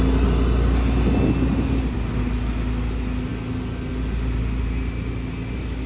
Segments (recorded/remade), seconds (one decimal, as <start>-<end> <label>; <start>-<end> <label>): 0.0-5.9 recorded